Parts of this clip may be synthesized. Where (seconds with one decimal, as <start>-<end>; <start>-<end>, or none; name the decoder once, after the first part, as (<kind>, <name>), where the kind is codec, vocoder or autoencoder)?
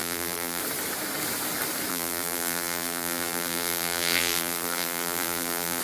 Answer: 0.0-0.6 (vocoder, BigVGAN v2); 1.9-5.8